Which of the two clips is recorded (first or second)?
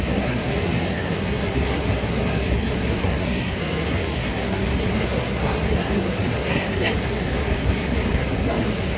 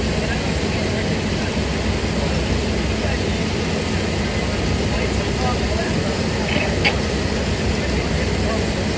second